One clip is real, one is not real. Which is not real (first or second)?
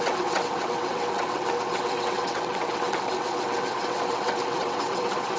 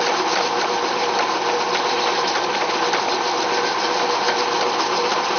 first